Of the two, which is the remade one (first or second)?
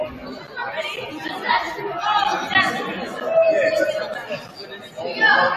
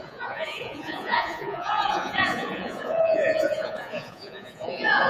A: second